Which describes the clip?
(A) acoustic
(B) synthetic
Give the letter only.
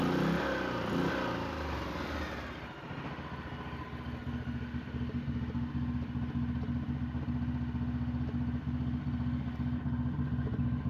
A